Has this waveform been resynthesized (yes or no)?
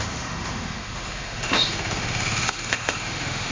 yes